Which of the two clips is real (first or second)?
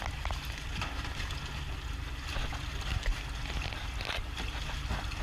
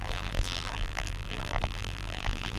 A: first